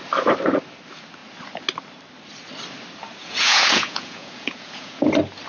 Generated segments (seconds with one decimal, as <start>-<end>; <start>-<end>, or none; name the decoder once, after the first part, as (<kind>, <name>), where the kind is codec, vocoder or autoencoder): 3.2-5.1 (vocoder, Vocos)